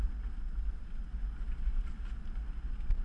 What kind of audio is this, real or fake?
real